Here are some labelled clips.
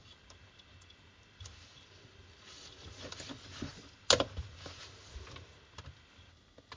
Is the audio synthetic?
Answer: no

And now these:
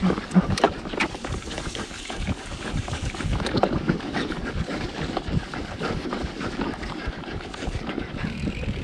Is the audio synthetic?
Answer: yes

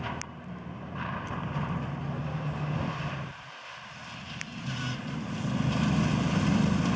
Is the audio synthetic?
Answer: no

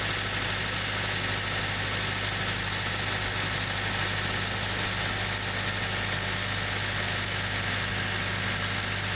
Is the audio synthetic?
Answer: no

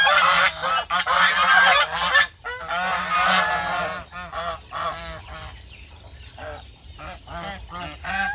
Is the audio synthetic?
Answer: no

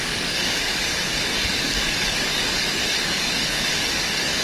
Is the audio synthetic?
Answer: yes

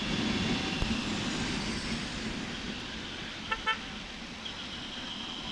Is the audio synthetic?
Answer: no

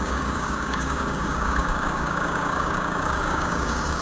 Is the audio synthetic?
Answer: yes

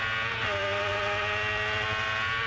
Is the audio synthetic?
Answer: no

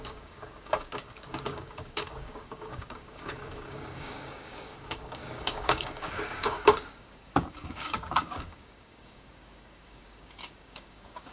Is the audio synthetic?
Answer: yes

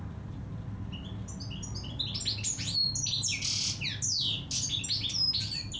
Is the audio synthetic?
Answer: no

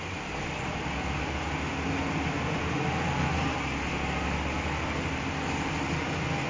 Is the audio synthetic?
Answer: no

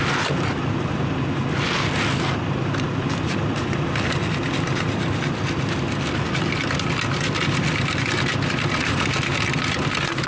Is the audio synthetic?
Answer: no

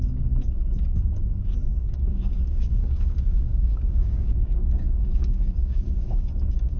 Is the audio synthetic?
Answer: yes